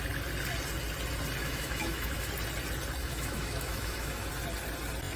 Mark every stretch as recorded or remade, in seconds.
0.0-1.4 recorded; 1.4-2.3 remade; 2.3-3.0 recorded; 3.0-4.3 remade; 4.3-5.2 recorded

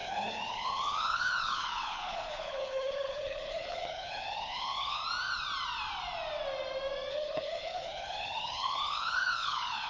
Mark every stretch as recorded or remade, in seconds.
0.0-5.0 remade; 5.0-7.1 recorded; 7.1-9.9 remade

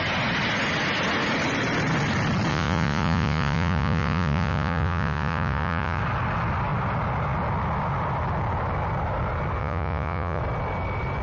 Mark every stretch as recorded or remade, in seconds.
0.0-2.5 recorded; 2.5-6.0 remade; 6.0-9.6 recorded; 9.6-10.4 remade; 10.4-11.2 recorded